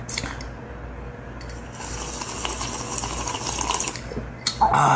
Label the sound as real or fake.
real